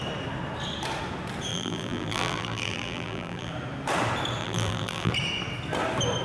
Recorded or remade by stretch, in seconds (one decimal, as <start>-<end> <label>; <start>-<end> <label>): 0.0-1.5 recorded; 1.5-3.5 remade; 3.5-4.4 recorded; 4.4-5.1 remade; 5.1-6.2 recorded